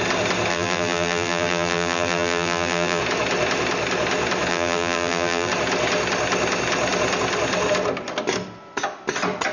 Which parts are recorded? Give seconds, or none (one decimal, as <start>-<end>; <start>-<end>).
0.0-0.5; 3.0-4.5; 5.5-9.5